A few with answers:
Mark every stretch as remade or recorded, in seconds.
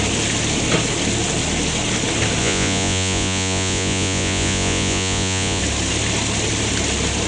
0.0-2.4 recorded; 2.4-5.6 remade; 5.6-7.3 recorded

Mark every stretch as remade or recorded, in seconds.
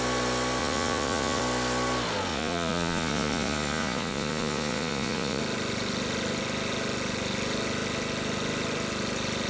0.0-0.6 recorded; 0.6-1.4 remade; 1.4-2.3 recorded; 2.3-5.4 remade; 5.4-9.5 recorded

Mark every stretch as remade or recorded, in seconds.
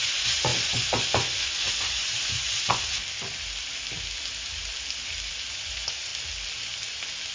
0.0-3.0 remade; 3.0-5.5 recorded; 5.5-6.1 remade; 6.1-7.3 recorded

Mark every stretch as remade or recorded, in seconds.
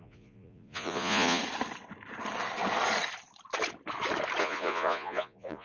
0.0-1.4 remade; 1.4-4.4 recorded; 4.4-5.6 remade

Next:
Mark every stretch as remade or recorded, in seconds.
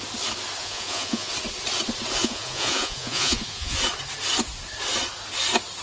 0.0-0.6 recorded; 0.6-1.3 remade; 1.3-2.2 recorded; 2.2-3.8 remade; 3.8-5.8 recorded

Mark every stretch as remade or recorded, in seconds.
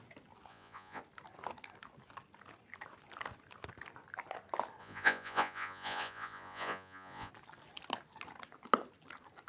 0.0-0.5 recorded; 0.5-1.0 remade; 1.0-4.8 recorded; 4.8-7.3 remade; 7.3-9.5 recorded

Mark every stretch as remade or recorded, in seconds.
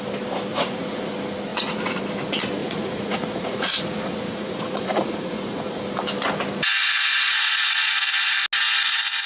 0.0-0.5 recorded; 0.5-1.1 remade; 1.1-1.5 recorded; 1.5-2.0 remade; 2.0-2.6 recorded; 2.6-5.8 remade; 5.8-6.8 recorded; 6.8-7.7 remade; 7.7-9.3 recorded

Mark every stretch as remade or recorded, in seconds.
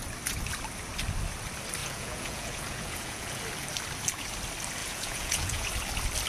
0.0-1.8 recorded; 1.8-3.4 remade; 3.4-4.8 recorded; 4.8-5.7 remade; 5.7-6.3 recorded